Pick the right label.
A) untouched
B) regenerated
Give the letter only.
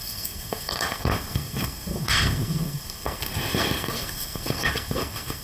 B